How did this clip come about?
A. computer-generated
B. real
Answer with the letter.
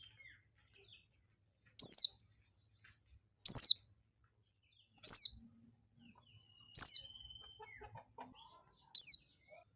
B